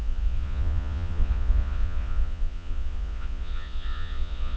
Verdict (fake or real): fake